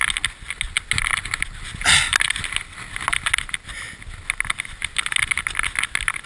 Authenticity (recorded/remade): recorded